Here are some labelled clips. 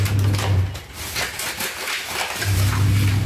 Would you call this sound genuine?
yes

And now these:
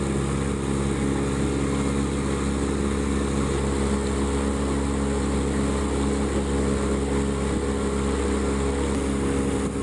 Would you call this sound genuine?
yes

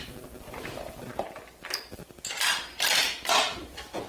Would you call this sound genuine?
no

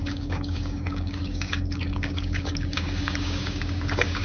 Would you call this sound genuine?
no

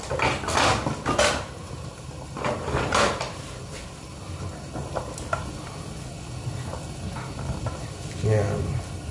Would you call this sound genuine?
yes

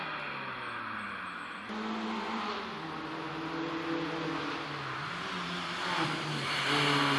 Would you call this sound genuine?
yes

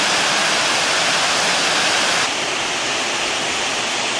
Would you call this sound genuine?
yes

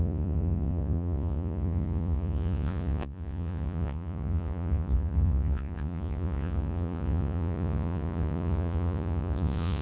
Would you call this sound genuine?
no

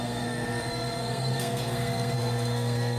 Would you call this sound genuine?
no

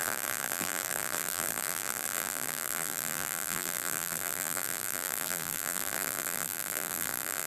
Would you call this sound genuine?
no